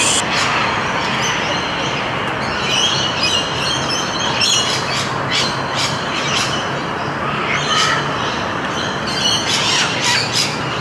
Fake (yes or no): no